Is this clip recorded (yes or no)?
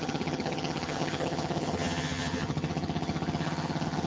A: no